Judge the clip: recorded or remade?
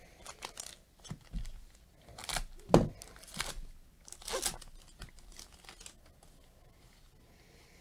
recorded